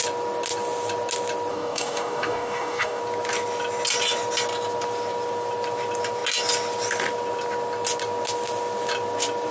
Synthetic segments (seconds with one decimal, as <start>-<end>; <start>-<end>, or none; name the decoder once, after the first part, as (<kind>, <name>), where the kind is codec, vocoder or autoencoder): 1.5-3.0 (codec, DAC)

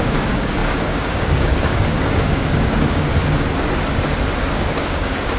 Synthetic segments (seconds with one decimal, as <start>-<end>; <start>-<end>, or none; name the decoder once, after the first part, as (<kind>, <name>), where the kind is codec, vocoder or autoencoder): 0.0-3.1 (codec, DAC); 4.5-5.4

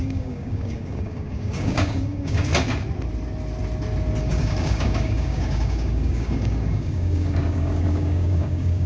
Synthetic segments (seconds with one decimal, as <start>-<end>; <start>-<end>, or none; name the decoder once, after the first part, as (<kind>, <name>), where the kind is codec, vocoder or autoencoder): 0.0-2.5 (codec, DAC); 4.2-8.9

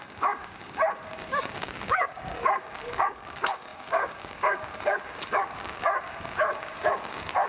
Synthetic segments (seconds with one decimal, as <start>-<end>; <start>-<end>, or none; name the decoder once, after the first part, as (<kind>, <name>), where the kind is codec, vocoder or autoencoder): 0.0-7.5 (codec, DAC)

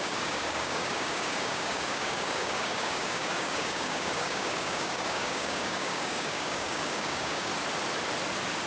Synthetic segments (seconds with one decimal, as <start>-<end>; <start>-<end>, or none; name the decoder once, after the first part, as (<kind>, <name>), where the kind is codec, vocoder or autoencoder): 0.0-7.5 (codec, DAC)